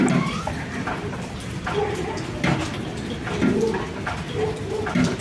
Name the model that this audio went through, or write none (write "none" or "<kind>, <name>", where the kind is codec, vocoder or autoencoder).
none